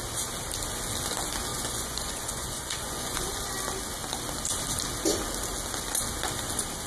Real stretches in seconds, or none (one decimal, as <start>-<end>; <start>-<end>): 0.0-1.5; 3.3-6.9